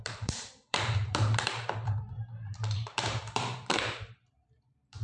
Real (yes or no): no